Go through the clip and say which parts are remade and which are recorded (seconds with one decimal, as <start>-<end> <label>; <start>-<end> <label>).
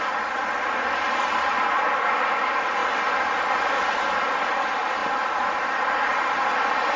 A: 0.0-7.0 recorded